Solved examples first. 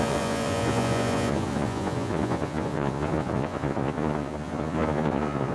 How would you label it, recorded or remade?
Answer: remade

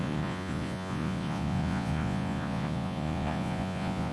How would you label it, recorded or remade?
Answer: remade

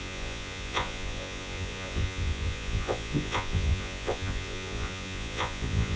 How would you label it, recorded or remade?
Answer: remade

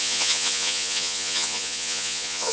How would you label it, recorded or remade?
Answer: remade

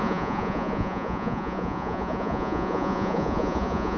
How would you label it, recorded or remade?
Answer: remade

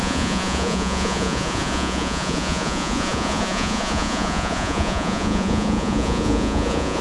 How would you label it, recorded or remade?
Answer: remade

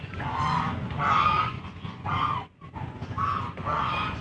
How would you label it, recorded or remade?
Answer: remade